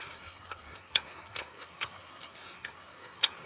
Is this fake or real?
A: fake